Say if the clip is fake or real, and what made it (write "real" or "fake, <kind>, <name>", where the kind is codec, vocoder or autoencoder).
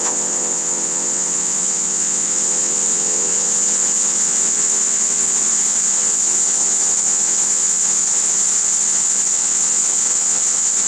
fake, vocoder, WaveNeXt